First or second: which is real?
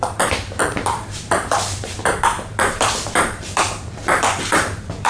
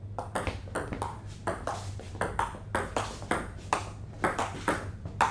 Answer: second